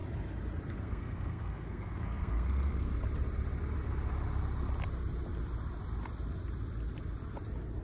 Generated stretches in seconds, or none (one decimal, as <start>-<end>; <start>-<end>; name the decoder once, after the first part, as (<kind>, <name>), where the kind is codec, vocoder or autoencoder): 0.8-2.9 (codec, SNAC)